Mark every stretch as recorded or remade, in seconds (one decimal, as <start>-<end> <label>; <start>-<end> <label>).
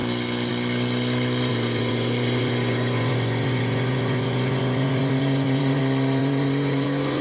0.0-1.5 recorded; 1.5-5.8 remade; 5.8-6.2 recorded; 6.2-7.2 remade